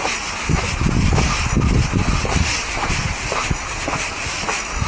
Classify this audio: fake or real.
real